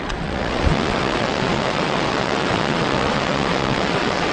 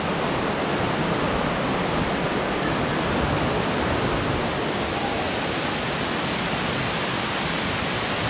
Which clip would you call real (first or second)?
second